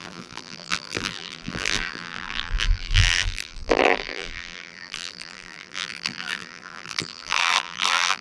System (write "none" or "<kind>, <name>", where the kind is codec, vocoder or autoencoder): vocoder, BigVGAN v2